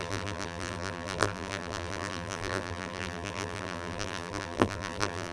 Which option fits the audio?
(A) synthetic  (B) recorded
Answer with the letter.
A